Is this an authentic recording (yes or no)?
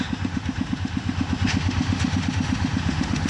no